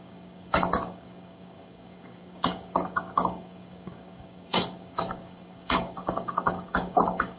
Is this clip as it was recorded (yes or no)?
no